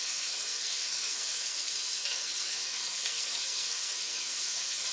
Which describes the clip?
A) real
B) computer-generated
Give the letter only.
B